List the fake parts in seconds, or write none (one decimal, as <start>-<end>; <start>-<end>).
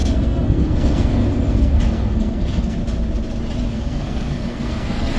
0.0-2.8; 3.7-5.2